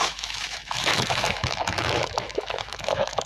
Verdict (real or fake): fake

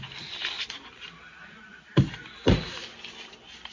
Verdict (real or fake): real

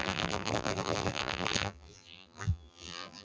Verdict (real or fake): fake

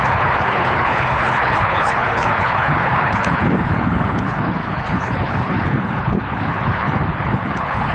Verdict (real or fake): fake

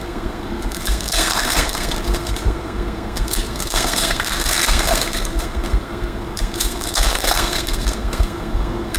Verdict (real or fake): fake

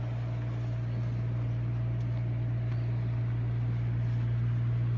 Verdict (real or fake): real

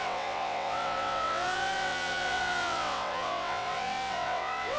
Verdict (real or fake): fake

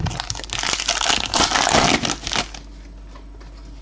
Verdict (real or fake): real